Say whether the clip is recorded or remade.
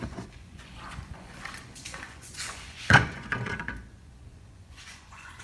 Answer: remade